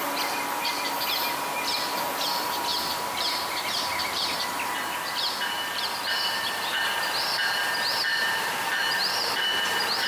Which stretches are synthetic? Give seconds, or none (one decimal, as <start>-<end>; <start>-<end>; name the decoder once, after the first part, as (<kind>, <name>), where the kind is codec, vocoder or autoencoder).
8.1-9.3 (vocoder, BigVGAN v2)

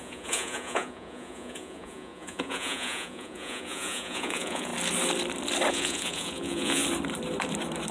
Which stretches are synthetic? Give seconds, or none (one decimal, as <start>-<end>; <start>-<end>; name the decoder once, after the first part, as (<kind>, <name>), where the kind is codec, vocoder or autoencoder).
0.0-4.7 (vocoder, Vocos); 5.7-6.8

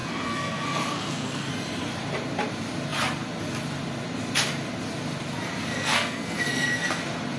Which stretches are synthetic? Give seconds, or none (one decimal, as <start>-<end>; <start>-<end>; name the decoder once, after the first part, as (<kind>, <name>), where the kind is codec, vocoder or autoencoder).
0.0-1.5 (codec, SNAC); 5.7-7.0

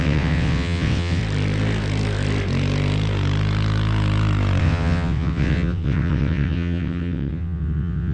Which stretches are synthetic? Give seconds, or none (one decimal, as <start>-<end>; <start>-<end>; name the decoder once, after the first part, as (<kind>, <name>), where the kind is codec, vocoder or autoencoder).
0.0-1.2 (vocoder, WaveNeXt); 4.6-8.1

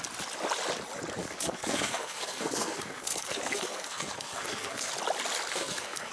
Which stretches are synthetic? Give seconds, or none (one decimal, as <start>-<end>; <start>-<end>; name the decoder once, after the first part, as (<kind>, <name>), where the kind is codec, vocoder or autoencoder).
1.2-4.9 (codec, SNAC); 5.5-6.1

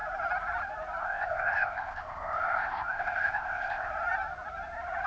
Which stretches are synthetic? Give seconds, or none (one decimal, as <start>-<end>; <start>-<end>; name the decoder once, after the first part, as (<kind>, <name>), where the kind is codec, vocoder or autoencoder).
1.0-3.9 (codec, ZipCodec)